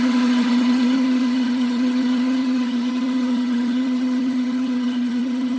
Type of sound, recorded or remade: remade